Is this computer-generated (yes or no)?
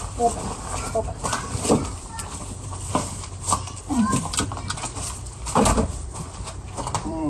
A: yes